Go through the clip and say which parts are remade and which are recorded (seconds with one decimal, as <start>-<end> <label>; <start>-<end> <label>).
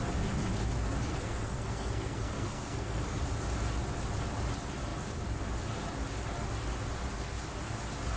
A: 0.0-1.1 recorded; 1.1-3.2 remade; 3.2-8.2 recorded